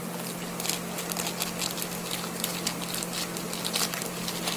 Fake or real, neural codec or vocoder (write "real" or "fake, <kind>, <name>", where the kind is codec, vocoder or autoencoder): real